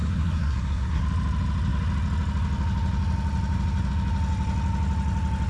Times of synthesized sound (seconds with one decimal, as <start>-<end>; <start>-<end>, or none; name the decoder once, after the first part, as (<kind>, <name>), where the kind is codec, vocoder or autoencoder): 0.0-1.0 (codec, SNAC)